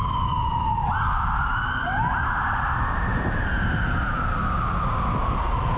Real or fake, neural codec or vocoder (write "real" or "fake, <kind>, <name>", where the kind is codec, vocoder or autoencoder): real